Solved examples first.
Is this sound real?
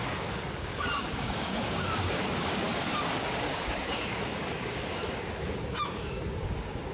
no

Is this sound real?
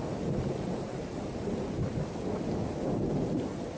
yes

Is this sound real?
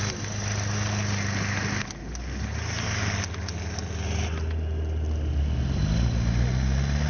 yes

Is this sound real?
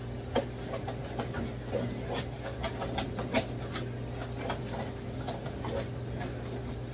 yes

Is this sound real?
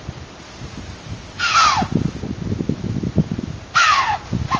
yes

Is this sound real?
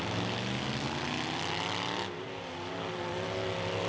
yes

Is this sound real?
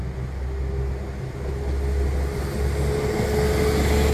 yes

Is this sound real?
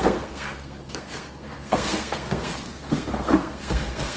no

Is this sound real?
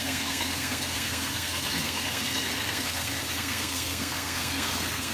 no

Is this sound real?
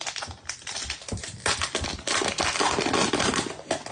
no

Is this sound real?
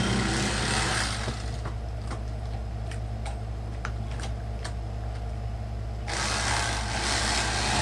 yes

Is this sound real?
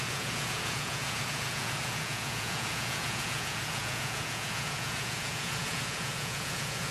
no